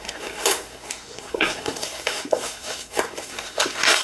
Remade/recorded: remade